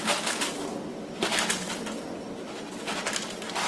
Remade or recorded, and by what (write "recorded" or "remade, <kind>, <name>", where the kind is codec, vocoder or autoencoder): recorded